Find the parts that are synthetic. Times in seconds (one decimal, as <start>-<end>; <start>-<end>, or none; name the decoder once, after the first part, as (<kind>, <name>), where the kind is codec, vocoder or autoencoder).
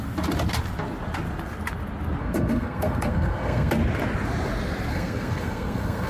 2.2-3.7 (codec, SNAC); 4.9-6.1